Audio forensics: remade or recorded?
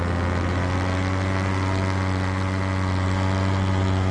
recorded